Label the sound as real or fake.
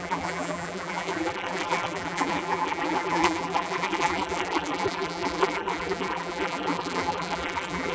fake